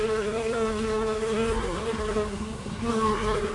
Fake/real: fake